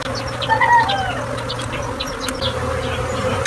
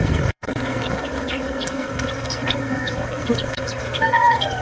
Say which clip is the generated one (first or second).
second